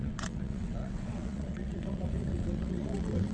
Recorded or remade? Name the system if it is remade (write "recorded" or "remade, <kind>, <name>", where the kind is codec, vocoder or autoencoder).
remade, vocoder, WaveNeXt